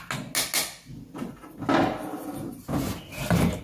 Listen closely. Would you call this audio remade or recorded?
recorded